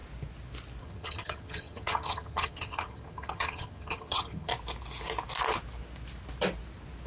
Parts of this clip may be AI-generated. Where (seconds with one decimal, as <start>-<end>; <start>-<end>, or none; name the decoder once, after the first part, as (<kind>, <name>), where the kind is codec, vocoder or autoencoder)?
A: 0.8-4.5 (vocoder, HiFi-GAN)